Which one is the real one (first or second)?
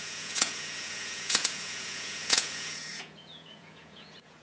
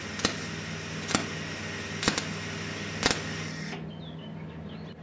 second